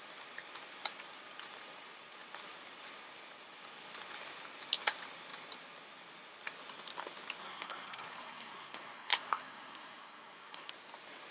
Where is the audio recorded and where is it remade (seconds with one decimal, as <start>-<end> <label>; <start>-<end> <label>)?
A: 0.0-7.4 recorded; 7.4-10.7 remade; 10.7-11.3 recorded

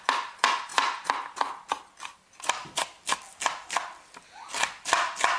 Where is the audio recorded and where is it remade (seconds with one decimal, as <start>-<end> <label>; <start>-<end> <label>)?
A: 0.0-5.4 recorded

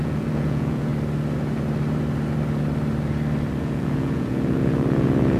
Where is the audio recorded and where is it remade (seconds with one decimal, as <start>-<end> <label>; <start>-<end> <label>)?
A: 0.0-0.9 remade; 0.9-3.6 recorded; 3.6-5.4 remade